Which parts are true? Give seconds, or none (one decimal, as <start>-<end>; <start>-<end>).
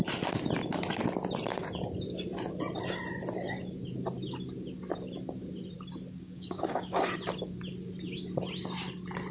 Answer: 0.0-6.2; 7.0-9.3